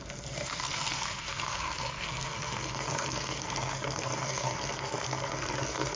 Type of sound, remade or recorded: remade